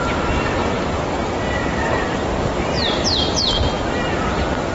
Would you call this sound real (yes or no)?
yes